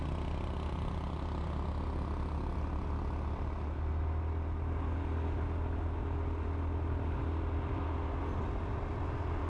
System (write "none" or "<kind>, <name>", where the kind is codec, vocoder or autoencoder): none